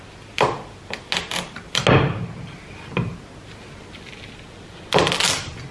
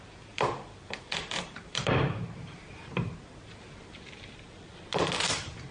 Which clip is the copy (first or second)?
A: second